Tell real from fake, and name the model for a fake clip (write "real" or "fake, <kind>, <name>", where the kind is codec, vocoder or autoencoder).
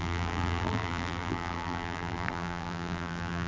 fake, vocoder, BigVGAN v2